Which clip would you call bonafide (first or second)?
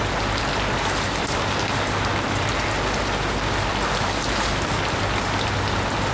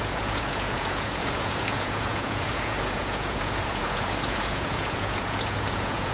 first